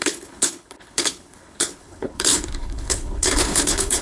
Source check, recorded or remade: remade